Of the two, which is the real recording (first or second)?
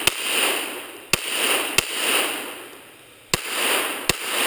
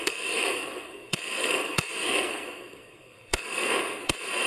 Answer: first